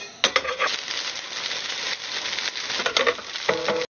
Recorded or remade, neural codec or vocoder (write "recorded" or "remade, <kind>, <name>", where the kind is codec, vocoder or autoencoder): recorded